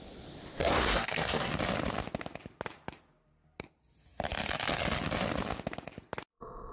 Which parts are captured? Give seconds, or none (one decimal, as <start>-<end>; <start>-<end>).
0.0-0.6; 1.5-6.7